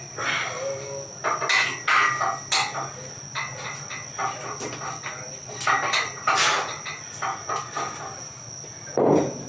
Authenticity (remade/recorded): recorded